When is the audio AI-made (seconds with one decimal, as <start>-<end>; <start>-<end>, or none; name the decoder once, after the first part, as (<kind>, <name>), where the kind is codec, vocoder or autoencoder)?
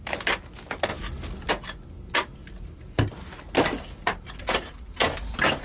none